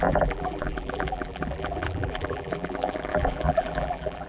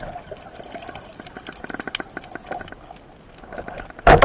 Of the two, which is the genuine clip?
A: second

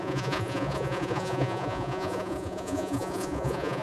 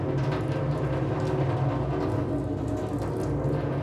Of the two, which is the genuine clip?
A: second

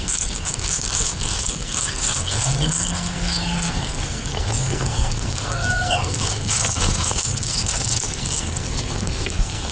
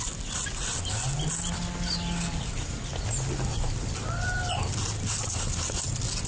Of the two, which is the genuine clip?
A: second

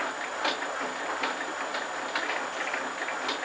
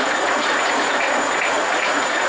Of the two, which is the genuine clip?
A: first